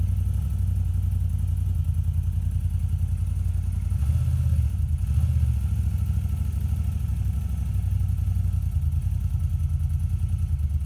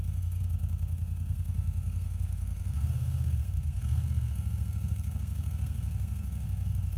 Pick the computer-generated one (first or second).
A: second